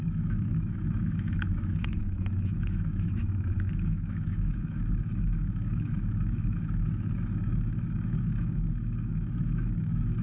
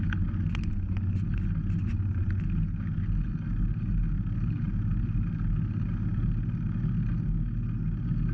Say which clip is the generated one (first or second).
first